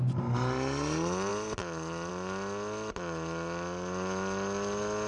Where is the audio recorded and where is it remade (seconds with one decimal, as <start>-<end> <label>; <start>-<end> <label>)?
0.0-5.1 recorded